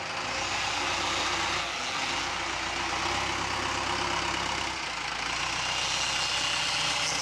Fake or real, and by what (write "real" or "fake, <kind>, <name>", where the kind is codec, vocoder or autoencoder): real